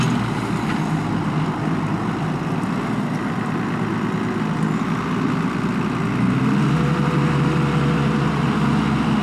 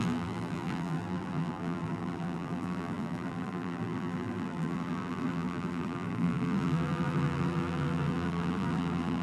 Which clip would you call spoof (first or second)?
second